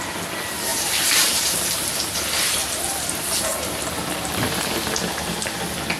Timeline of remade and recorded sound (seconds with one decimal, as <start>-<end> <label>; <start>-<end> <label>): 0.0-0.7 recorded; 0.7-2.2 remade; 2.2-2.6 recorded; 2.6-5.6 remade; 5.6-6.0 recorded